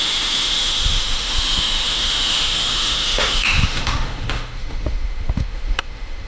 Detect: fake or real fake